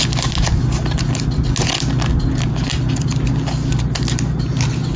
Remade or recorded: recorded